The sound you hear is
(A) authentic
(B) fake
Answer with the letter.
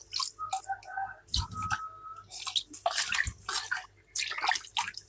A